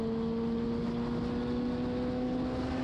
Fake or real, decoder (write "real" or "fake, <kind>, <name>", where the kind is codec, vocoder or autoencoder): real